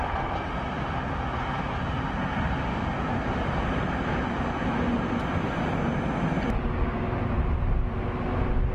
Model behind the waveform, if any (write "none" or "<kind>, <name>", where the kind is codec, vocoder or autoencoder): none